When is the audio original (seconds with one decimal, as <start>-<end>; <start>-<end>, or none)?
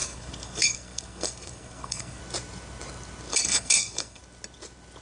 2.2-3.3; 4.2-5.0